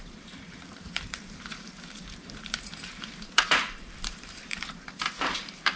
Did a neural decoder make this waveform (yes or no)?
yes